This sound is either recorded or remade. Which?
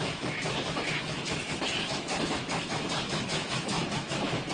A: remade